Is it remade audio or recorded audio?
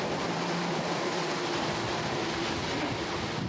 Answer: recorded